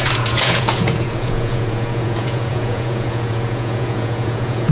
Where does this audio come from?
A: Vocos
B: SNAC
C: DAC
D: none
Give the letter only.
A